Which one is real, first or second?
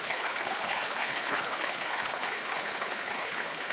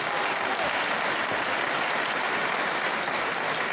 second